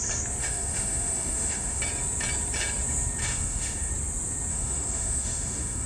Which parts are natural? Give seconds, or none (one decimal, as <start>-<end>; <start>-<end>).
0.0-0.4; 1.8-3.2; 3.9-4.5